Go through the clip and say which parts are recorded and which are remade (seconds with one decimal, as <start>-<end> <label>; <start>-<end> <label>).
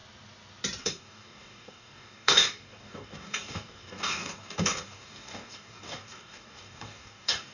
0.0-0.8 recorded; 0.8-7.5 remade